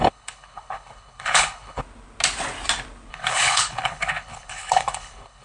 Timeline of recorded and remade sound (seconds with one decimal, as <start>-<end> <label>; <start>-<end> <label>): 0.0-1.8 remade; 1.8-3.1 recorded; 3.1-5.4 remade